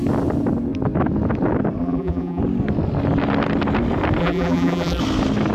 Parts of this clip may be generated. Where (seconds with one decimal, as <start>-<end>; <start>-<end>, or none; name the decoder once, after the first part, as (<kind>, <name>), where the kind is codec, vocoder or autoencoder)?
1.8-2.4 (vocoder, BigVGAN v2); 4.2-5.0